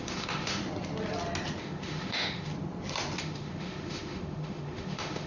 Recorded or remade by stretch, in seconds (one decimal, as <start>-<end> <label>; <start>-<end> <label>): 0.0-0.6 remade; 0.6-1.6 recorded; 1.6-2.5 remade; 2.5-3.2 recorded; 3.2-5.3 remade